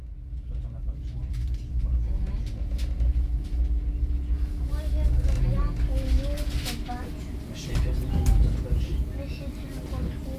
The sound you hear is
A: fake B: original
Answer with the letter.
B